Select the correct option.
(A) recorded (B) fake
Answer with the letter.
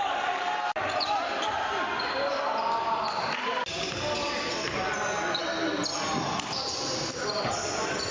A